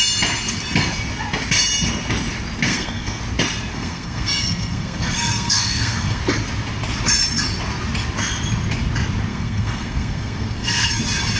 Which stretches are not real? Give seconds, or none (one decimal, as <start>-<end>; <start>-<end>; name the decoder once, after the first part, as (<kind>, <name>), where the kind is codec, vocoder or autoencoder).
2.7-3.2 (codec, SNAC); 3.7-6.2; 9.3-11.0